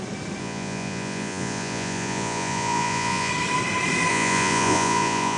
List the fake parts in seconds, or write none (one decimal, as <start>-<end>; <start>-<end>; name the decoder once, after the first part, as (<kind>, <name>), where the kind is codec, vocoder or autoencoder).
0.4-3.3 (vocoder, Vocos); 4.1-5.4